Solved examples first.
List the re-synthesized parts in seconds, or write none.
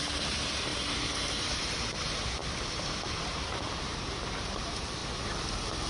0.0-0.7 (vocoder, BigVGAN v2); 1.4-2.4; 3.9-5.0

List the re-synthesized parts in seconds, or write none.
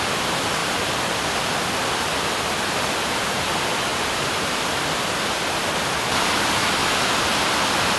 0.6-1.2 (vocoder, BigVGAN v2); 3.9-4.8; 6.8-7.5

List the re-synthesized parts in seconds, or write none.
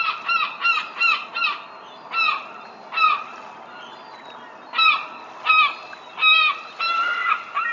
3.3-5.5 (vocoder, BigVGAN v2); 6.3-6.8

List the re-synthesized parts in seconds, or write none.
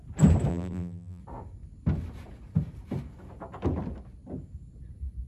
0.5-1.2 (vocoder, BigVGAN v2)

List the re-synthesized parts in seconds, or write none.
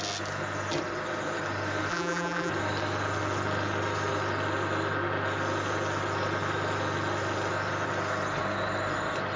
1.9-2.5 (vocoder, BigVGAN v2)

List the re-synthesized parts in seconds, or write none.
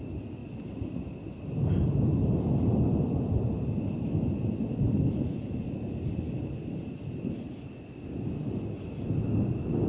6.6-7.7 (vocoder, BigVGAN v2)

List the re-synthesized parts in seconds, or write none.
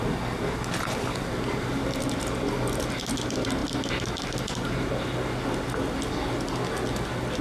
none